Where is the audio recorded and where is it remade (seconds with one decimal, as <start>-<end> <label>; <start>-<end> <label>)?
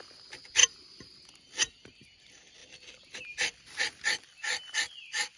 0.0-5.4 recorded